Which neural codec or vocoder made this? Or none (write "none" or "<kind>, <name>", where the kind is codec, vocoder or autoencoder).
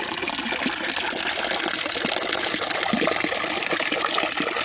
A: none